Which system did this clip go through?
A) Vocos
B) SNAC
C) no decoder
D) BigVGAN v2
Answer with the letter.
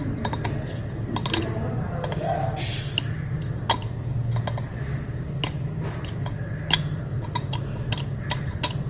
C